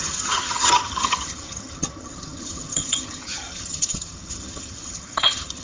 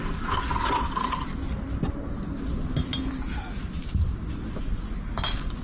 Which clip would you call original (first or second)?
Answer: second